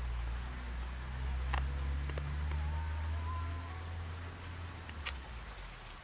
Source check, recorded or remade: recorded